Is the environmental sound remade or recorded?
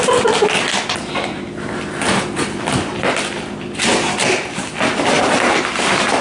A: recorded